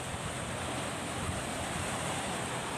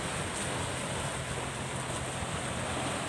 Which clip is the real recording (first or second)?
second